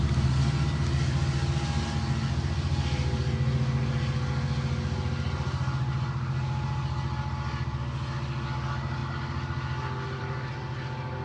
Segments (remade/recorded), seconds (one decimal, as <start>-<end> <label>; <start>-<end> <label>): 0.0-11.2 recorded